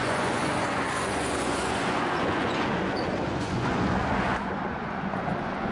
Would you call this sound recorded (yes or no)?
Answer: no